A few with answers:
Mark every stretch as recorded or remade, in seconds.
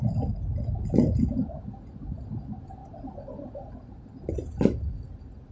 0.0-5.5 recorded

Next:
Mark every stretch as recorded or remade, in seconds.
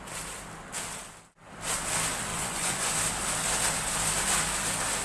0.0-2.3 recorded; 2.3-2.9 remade; 2.9-5.0 recorded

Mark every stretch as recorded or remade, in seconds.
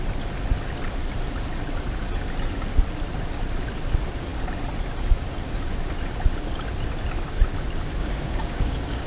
0.0-8.0 recorded; 8.0-9.1 remade